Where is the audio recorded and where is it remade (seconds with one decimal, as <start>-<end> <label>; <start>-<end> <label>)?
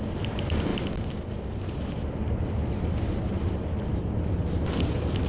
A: 0.0-5.3 recorded